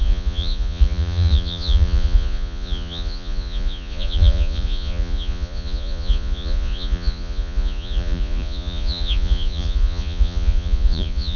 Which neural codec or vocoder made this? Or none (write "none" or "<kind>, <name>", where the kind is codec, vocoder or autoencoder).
vocoder, Vocos